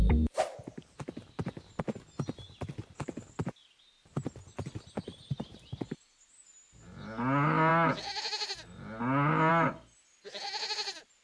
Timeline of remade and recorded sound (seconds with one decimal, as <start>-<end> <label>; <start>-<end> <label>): 0.0-11.2 recorded